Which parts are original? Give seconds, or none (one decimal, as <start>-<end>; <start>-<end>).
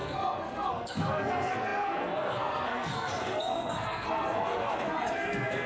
none